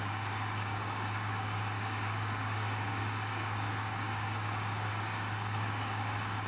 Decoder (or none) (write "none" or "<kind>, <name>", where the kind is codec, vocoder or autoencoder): codec, DAC